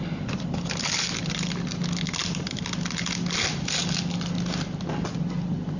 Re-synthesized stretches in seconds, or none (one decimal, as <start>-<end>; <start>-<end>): none